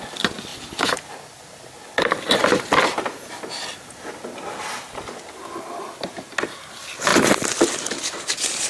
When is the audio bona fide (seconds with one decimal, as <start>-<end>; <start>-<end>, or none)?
0.0-8.7